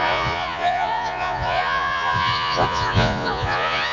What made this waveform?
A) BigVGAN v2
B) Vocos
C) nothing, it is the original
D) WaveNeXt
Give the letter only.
B